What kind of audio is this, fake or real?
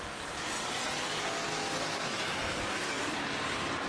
real